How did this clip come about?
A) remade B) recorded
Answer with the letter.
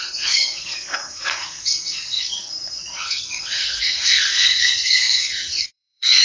A